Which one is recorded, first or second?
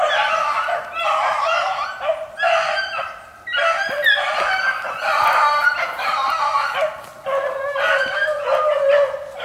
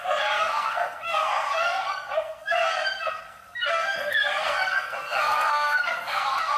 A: first